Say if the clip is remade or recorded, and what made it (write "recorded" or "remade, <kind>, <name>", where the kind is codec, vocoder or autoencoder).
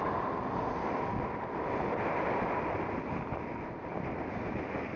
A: recorded